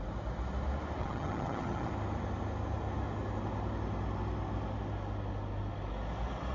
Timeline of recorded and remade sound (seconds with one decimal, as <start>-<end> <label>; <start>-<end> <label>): 0.0-1.0 recorded; 1.0-1.9 remade; 1.9-6.5 recorded